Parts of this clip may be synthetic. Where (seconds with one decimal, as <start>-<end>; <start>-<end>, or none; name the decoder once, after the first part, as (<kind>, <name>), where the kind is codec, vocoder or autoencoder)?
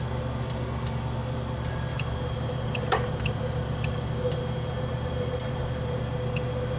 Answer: 1.9-6.0 (vocoder, BigVGAN v2)